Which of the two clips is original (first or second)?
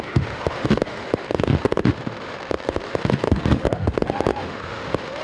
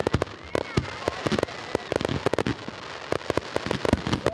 second